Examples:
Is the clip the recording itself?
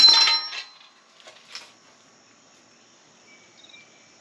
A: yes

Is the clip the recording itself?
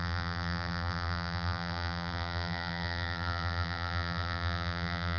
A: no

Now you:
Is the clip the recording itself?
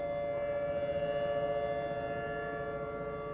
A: yes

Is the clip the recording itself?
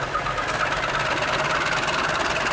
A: yes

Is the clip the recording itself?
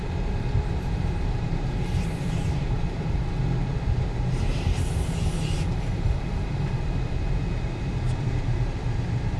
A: no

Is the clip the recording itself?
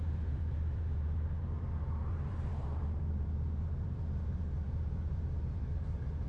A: no